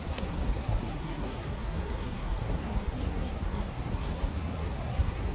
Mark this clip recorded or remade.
remade